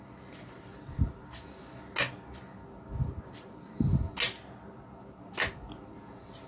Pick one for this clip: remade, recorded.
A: recorded